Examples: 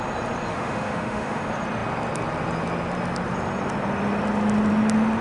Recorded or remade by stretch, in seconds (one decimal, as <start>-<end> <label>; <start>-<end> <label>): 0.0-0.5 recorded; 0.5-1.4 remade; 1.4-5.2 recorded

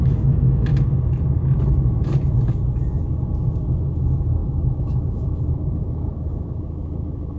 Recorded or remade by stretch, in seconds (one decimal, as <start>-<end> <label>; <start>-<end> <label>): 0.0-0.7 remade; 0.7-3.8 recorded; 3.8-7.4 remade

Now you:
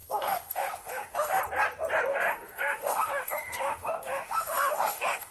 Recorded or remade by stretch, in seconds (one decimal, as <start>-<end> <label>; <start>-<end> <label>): 0.0-1.4 remade; 1.4-2.1 recorded; 2.1-5.3 remade